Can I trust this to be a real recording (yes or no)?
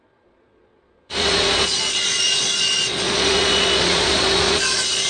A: no